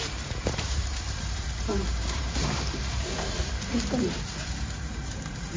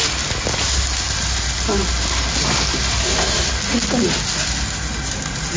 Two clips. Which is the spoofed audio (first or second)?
first